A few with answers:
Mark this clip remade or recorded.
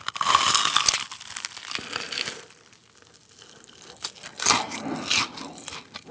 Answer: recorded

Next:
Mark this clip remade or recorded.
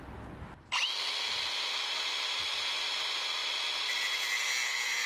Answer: recorded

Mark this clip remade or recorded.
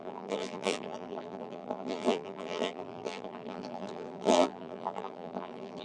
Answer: remade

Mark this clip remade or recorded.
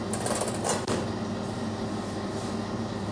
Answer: recorded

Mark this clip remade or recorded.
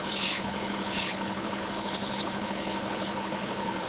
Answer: remade